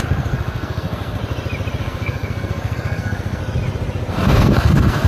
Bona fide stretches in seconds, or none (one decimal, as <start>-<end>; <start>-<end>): 1.2-1.8; 3.4-4.1